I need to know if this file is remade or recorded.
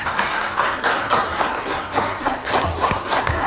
remade